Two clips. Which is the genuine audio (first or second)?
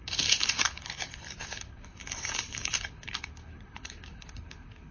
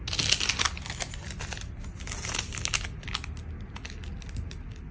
second